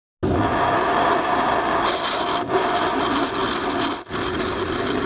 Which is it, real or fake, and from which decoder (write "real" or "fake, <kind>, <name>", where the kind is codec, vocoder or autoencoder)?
real